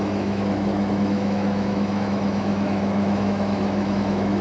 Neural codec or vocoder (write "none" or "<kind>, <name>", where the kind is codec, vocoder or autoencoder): autoencoder, DAC-VAE